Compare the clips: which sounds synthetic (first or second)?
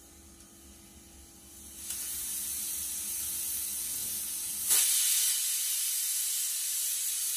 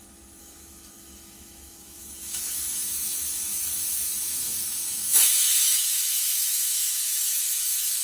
second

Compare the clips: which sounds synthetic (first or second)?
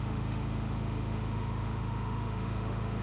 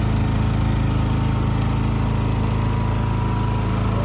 first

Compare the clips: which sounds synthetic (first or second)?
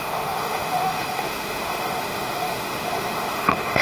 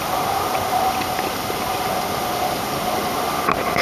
first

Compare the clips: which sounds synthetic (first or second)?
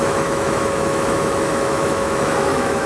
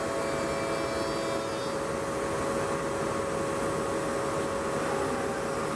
first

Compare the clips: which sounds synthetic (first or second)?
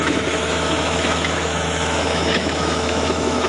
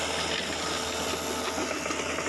first